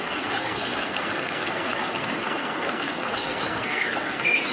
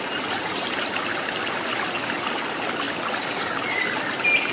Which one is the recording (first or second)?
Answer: second